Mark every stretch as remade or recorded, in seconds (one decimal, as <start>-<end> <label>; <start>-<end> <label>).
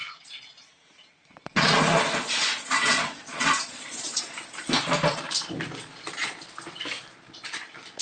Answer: 0.0-4.2 remade; 4.2-8.0 recorded